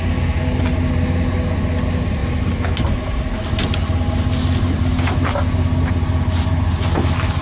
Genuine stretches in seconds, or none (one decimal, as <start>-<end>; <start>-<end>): 0.0-7.4